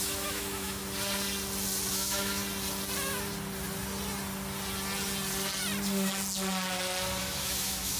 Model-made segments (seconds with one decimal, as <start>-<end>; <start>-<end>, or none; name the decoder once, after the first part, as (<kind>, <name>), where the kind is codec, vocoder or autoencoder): 0.0-0.8 (autoencoder, DAC-VAE); 1.9-2.4; 7.2-8.0